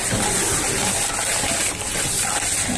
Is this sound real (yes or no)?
yes